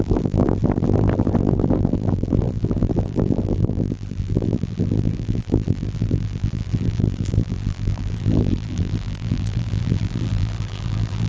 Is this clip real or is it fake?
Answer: fake